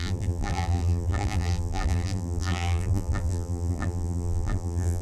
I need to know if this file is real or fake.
fake